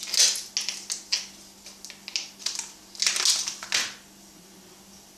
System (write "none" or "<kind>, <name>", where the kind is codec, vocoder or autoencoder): none